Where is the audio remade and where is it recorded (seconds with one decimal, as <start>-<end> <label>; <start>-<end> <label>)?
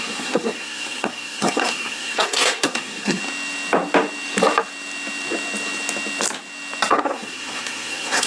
0.0-3.2 remade; 3.2-6.9 recorded; 6.9-8.3 remade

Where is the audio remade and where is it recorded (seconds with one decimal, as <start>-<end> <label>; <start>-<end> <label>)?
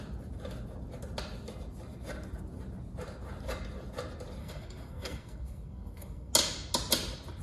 0.0-4.4 recorded; 4.4-6.3 remade; 6.3-7.4 recorded